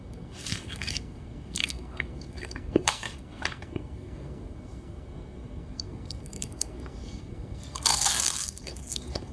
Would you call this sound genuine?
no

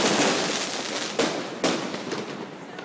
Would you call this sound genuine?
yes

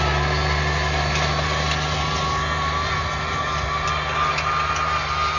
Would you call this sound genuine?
yes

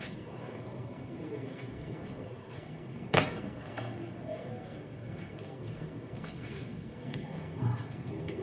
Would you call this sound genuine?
no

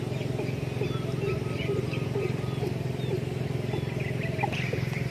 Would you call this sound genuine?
yes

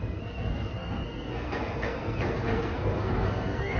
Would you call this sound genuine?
no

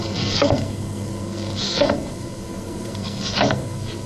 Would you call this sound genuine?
no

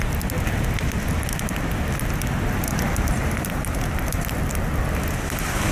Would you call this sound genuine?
yes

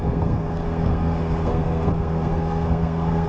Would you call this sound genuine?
no